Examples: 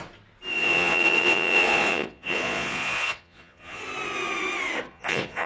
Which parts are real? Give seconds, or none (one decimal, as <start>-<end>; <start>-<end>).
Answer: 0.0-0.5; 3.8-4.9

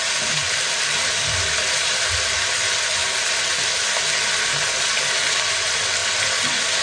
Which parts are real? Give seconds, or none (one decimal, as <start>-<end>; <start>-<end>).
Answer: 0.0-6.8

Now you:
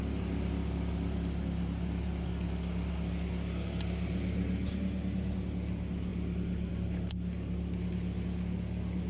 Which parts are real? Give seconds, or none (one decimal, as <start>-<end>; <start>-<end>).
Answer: 0.0-9.1

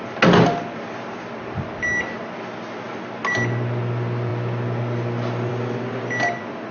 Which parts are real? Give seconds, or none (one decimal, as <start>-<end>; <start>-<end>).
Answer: 0.0-6.7

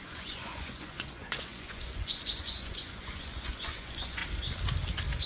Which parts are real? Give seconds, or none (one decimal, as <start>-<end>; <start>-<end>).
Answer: 4.2-5.3

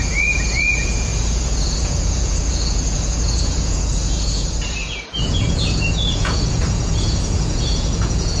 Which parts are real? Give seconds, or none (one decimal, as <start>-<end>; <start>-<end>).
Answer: none

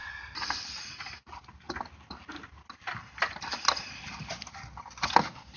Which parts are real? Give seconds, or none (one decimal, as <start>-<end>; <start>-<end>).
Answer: 0.0-5.6